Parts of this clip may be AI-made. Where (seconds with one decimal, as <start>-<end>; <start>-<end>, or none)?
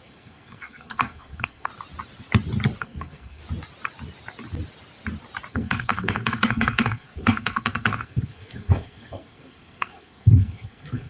0.0-1.7; 2.8-3.4; 5.5-11.1